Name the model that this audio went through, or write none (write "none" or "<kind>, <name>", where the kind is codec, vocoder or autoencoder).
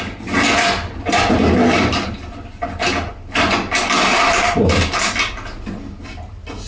none